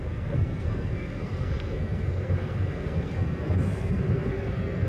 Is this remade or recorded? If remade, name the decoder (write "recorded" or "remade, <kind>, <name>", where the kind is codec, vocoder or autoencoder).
remade, codec, SNAC